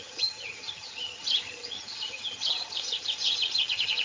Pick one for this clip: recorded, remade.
remade